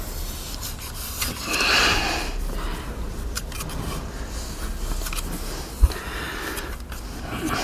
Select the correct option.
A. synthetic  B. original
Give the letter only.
B